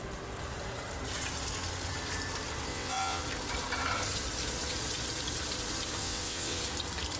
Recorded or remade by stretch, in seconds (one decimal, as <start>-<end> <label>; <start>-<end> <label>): 0.0-2.7 recorded; 2.7-3.2 remade; 3.2-6.0 recorded; 6.0-6.6 remade; 6.6-7.2 recorded